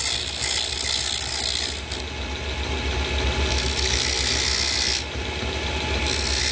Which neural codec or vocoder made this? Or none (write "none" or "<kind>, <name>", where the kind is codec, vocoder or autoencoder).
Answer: none